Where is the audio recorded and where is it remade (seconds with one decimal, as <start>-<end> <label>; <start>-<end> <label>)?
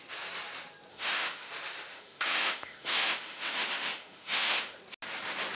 0.0-0.9 recorded; 0.9-1.5 remade; 1.5-1.9 recorded; 1.9-4.8 remade; 4.8-5.5 recorded